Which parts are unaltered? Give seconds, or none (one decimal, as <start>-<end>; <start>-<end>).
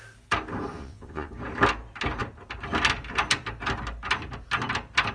0.0-0.7; 1.3-5.1